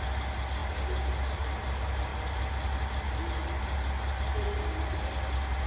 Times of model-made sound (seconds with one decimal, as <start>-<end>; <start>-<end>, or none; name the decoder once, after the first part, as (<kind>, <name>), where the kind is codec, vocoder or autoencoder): none